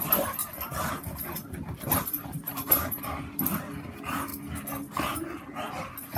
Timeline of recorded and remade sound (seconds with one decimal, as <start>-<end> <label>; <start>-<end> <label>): 0.0-0.4 recorded; 0.4-0.9 remade; 0.9-1.9 recorded; 1.9-3.0 remade; 3.0-6.2 recorded